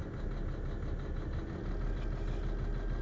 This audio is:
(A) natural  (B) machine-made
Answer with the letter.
A